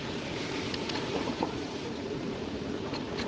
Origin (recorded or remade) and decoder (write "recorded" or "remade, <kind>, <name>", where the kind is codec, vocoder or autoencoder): remade, vocoder, Vocos